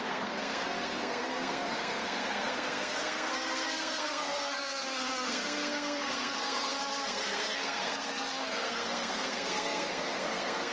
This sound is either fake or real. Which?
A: fake